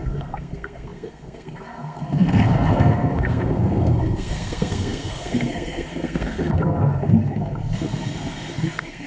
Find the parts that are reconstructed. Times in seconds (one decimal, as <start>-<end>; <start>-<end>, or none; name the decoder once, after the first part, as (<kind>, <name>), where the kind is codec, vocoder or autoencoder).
0.0-9.1 (codec, SNAC)

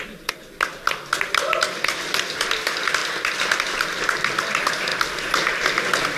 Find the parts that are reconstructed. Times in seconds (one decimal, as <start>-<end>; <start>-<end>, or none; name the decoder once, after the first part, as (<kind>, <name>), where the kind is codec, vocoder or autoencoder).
3.0-4.5 (vocoder, BigVGAN v2)

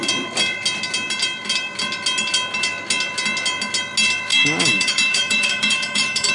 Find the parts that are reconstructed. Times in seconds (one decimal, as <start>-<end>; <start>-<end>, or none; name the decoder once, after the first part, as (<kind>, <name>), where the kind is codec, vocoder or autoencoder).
4.3-6.3 (autoencoder, DAC-VAE)

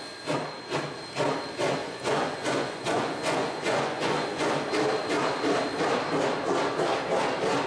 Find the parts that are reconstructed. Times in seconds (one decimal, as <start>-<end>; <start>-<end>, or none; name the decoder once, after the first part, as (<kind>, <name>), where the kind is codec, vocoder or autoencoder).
1.8-4.5 (vocoder, Vocos)

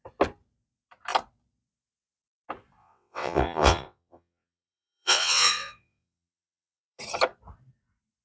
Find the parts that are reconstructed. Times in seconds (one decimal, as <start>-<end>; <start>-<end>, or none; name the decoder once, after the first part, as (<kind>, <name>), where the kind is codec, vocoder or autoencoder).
2.8-7.0 (vocoder, WaveNeXt)

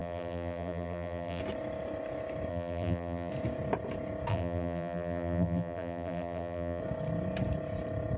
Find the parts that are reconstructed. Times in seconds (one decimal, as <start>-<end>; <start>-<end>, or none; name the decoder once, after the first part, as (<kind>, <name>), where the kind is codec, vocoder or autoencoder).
0.0-1.4 (vocoder, BigVGAN v2); 2.5-3.3; 4.3-6.8

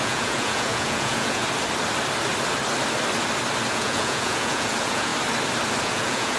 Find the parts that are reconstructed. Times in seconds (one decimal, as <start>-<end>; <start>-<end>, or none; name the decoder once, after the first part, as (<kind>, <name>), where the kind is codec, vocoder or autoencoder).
0.0-1.4 (vocoder, Vocos); 3.7-5.1; 5.8-6.4

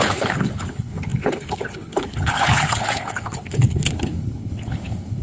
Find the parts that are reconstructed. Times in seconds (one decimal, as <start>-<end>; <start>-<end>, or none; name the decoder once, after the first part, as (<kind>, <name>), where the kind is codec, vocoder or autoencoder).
0.0-5.2 (codec, HILCodec)